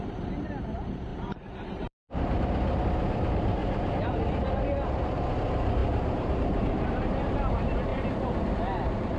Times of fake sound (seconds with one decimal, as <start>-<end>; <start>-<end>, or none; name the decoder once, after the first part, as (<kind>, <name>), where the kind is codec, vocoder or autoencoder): 0.0-3.6 (vocoder, BigVGAN v2); 5.0-9.2